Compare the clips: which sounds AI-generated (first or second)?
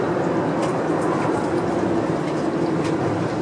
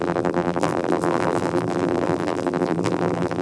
second